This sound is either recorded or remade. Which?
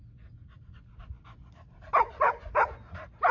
recorded